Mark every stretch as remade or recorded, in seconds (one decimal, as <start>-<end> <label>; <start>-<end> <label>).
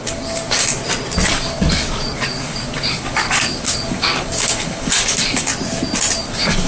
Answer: 0.0-0.8 remade; 0.8-1.3 recorded; 1.3-5.5 remade; 5.5-6.2 recorded; 6.2-6.7 remade